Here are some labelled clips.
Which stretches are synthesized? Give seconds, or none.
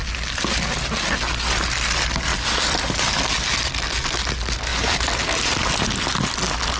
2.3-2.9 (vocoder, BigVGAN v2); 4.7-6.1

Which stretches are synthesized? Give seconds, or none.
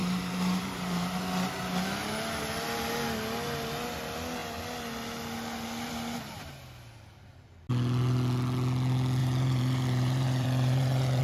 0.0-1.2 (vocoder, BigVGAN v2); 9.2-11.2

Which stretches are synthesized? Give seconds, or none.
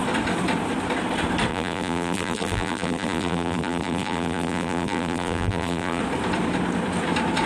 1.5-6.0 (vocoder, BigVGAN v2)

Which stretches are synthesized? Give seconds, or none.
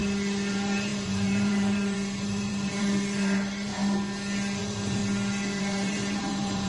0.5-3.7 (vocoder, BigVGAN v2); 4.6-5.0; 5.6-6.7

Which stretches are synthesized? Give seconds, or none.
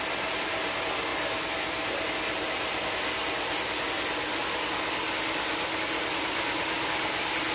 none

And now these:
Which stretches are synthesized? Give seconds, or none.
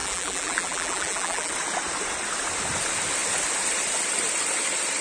0.0-1.5 (vocoder, BigVGAN v2)